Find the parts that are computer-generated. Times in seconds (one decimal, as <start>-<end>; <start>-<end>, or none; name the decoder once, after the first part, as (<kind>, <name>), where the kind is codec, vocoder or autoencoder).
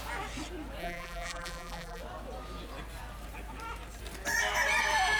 0.8-2.0 (vocoder, BigVGAN v2)